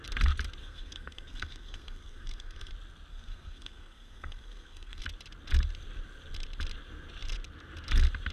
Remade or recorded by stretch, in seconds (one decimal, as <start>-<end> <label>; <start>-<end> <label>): 0.0-0.6 recorded; 0.6-2.7 remade; 2.7-3.1 recorded; 3.1-5.0 remade; 5.0-8.3 recorded